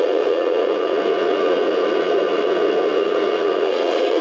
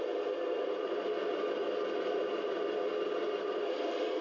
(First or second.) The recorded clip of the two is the second